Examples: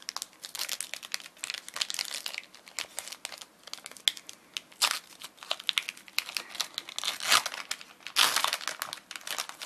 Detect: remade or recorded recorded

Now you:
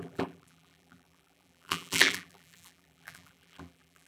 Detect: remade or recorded remade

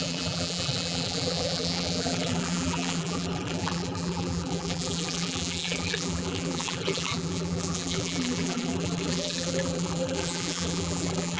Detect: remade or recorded remade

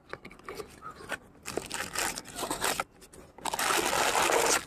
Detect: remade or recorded recorded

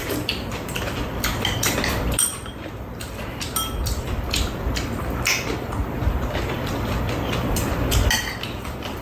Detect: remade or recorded remade